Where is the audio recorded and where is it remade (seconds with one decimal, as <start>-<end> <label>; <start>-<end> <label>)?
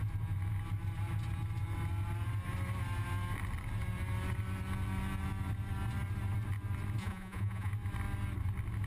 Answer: 0.0-7.0 recorded; 7.0-7.7 remade; 7.7-8.9 recorded